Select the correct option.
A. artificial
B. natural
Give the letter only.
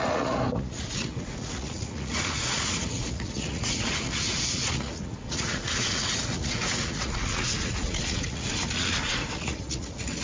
A